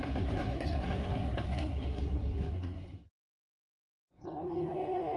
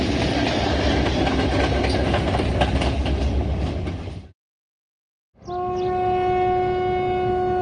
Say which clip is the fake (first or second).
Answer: first